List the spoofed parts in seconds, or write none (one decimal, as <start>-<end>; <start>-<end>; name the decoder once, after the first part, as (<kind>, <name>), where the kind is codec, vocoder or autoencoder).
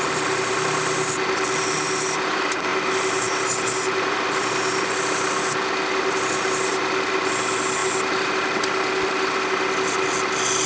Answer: none